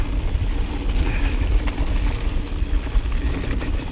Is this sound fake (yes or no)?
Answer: no